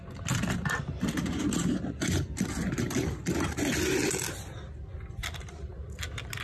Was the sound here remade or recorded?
recorded